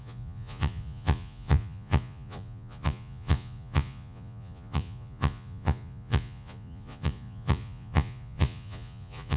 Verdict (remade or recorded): remade